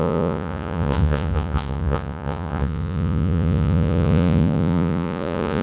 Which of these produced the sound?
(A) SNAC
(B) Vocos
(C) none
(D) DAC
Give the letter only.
B